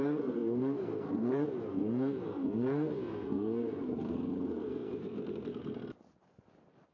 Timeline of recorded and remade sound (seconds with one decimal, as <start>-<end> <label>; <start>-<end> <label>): 0.0-5.8 remade; 5.8-6.9 recorded